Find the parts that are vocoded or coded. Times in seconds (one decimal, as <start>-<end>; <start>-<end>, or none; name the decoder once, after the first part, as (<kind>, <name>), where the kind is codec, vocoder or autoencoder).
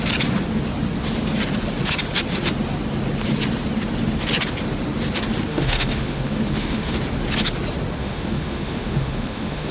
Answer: 5.5-7.0 (autoencoder, DAC-VAE); 8.0-9.7